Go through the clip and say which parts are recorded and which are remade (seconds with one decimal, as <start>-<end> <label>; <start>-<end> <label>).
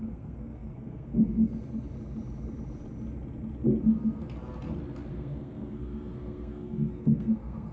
0.0-1.5 remade; 1.5-3.8 recorded; 3.8-4.2 remade; 4.2-5.1 recorded; 5.1-7.7 remade